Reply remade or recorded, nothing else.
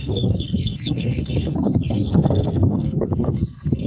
remade